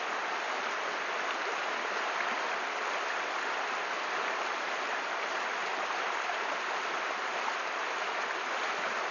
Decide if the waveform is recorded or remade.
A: recorded